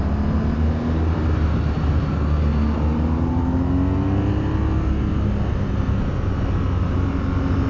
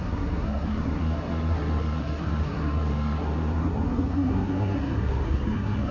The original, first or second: first